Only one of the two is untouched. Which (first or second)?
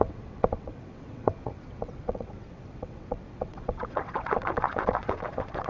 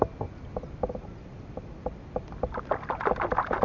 second